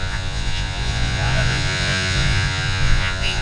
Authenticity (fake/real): fake